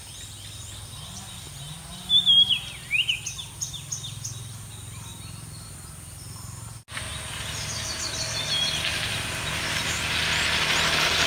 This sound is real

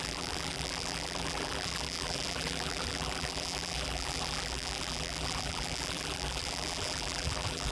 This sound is fake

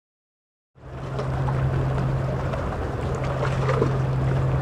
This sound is real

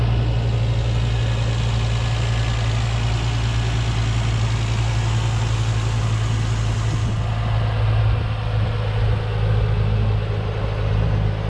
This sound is real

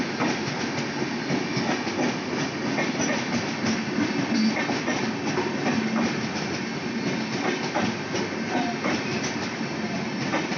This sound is real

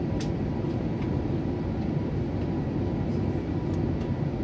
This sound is real